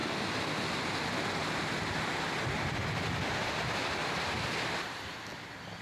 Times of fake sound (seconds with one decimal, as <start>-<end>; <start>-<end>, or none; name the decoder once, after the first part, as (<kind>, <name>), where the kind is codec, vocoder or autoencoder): none